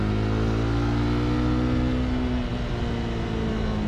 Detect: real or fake real